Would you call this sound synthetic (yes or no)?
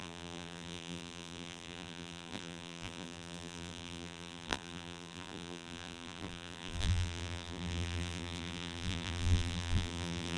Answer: yes